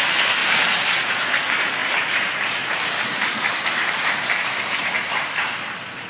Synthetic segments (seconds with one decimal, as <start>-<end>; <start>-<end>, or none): 0.4-1.2; 1.8-4.1; 4.8-5.5